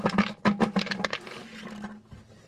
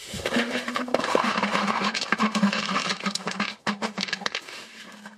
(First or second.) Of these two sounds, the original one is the first